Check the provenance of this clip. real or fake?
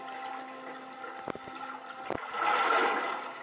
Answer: real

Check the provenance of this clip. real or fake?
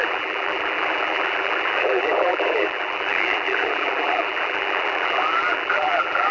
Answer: fake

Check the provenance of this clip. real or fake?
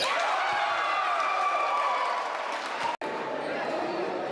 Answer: real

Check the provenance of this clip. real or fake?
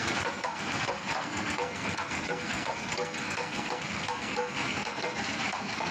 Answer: fake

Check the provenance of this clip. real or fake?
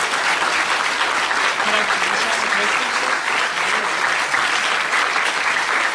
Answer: real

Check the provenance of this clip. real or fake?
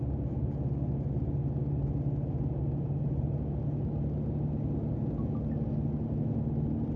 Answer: real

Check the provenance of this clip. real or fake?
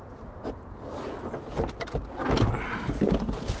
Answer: real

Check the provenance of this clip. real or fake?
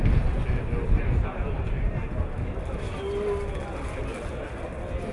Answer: real